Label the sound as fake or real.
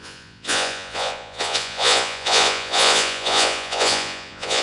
fake